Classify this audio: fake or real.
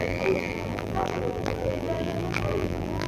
fake